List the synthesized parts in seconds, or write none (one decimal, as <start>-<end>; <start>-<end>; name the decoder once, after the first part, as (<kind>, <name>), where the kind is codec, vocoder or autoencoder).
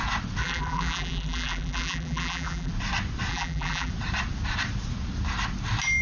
0.4-2.7 (vocoder, BigVGAN v2); 3.3-3.9